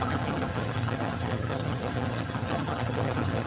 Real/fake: fake